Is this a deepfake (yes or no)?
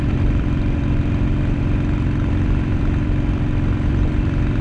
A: yes